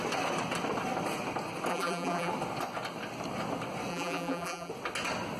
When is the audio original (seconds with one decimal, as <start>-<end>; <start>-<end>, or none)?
0.0-1.7; 2.3-3.9; 4.7-5.4